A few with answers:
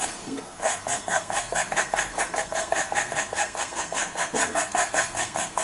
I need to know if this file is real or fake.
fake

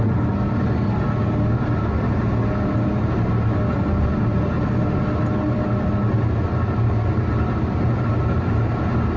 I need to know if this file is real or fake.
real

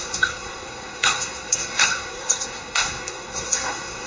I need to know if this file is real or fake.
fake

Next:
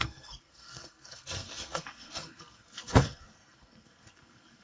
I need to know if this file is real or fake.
fake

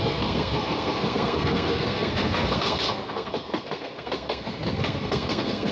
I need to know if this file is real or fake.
fake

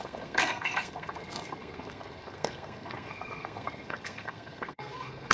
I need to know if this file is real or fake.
fake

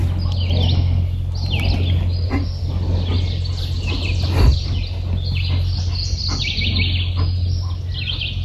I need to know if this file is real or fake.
real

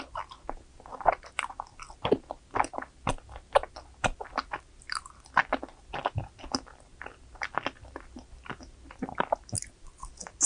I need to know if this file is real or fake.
real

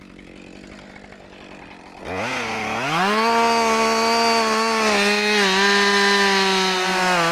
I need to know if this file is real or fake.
real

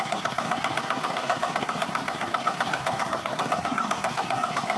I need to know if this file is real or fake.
fake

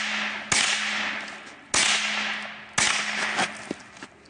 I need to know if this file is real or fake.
real